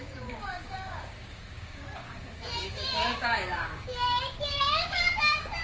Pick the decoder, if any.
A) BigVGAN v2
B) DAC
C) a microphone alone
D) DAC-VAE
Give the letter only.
B